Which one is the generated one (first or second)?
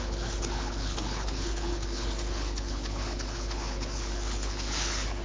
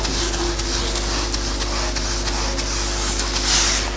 first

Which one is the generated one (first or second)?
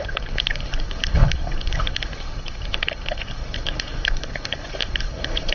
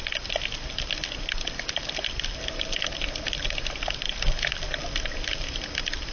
first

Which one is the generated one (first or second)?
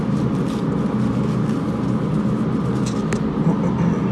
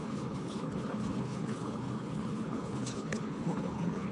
second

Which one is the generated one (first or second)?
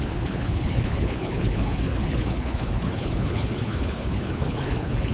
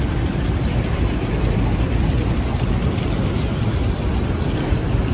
first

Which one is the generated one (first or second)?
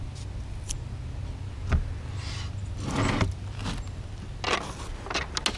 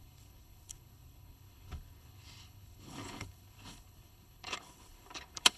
second